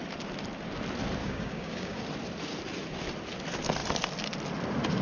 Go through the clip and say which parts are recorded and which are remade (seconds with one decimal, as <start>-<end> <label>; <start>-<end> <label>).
0.0-1.2 recorded; 1.2-2.0 remade; 2.0-5.0 recorded